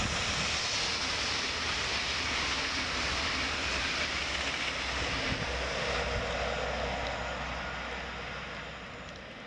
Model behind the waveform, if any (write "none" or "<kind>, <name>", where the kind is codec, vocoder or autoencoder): none